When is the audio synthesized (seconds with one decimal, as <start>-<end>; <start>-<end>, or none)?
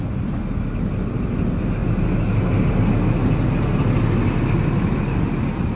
none